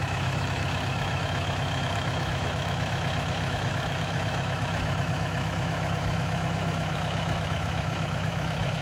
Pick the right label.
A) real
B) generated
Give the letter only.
B